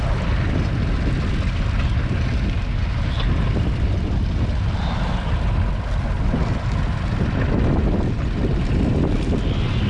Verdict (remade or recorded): recorded